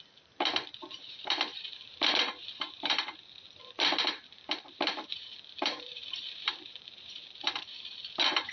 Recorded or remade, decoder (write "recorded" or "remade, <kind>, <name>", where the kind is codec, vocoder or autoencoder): remade, vocoder, BigVGAN v2